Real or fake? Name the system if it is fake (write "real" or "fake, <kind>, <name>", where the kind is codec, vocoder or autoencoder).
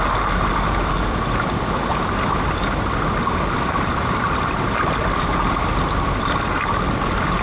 real